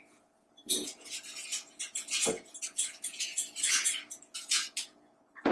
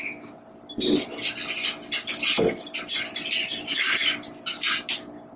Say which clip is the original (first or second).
second